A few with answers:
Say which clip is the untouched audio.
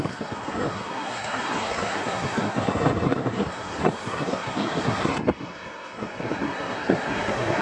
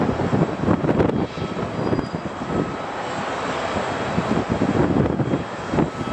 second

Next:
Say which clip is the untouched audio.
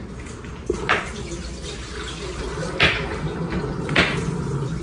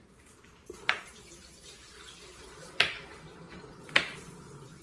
first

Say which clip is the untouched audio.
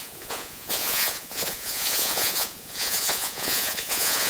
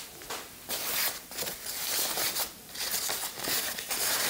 second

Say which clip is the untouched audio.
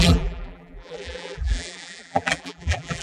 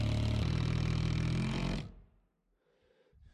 second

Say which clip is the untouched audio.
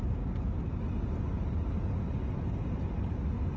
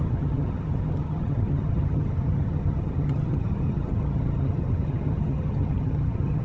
first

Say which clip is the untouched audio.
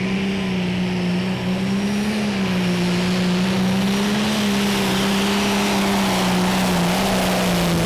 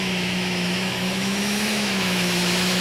first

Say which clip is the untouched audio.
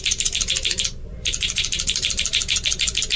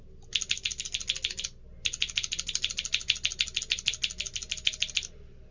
second